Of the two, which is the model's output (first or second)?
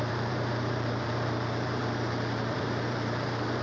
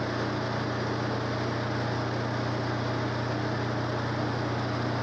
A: first